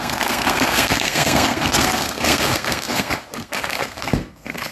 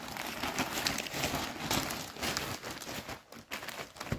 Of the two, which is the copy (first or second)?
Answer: first